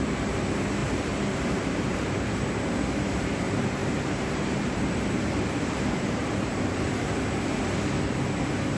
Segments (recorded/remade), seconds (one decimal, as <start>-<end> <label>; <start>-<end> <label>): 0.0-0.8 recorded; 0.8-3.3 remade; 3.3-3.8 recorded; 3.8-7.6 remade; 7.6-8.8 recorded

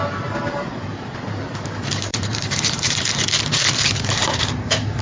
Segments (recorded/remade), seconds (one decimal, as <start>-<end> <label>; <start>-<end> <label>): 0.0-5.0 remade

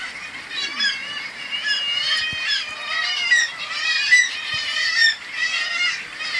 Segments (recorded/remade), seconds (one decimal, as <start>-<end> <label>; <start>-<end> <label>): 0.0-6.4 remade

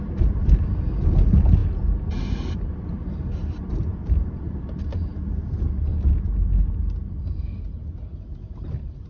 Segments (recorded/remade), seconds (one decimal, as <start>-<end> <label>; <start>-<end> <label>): 0.0-5.9 remade; 5.9-7.2 recorded; 7.2-9.1 remade

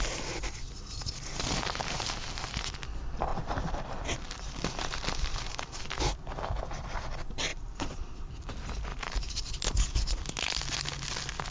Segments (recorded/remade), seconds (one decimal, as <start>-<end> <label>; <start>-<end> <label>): 0.0-3.3 recorded; 3.3-5.8 remade; 5.8-7.5 recorded; 7.5-8.5 remade; 8.5-8.9 recorded; 8.9-9.5 remade; 9.5-11.5 recorded

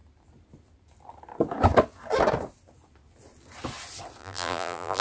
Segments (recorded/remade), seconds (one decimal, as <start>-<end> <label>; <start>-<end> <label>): 0.0-4.2 recorded; 4.2-5.0 remade